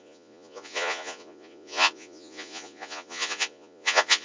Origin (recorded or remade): remade